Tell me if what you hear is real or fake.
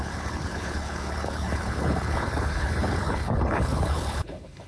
fake